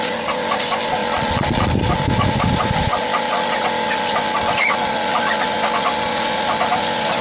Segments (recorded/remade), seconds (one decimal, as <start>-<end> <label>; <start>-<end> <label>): 0.0-1.0 recorded; 1.0-1.7 remade; 1.7-7.2 recorded